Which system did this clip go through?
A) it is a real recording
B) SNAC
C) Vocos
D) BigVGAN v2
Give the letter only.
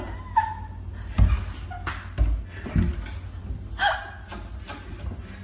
A